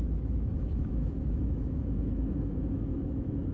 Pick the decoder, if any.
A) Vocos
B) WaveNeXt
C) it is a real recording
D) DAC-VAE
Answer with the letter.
D